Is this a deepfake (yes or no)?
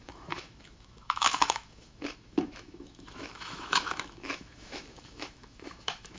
yes